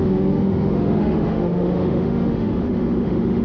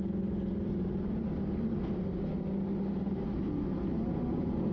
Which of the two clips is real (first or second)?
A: second